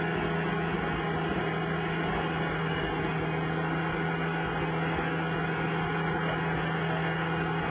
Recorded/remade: recorded